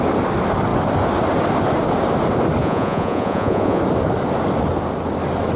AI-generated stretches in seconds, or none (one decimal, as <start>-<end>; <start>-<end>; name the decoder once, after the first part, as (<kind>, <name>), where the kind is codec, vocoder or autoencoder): 2.6-3.8 (vocoder, Vocos)